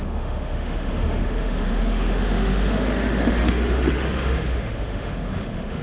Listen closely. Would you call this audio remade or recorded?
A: remade